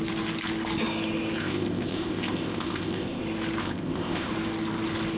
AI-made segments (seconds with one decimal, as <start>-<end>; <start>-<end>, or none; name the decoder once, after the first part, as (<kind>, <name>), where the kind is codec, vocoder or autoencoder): 1.4-3.2 (codec, ZipCodec); 3.6-4.3